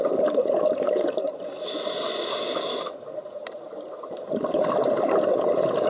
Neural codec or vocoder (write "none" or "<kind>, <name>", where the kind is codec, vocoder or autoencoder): none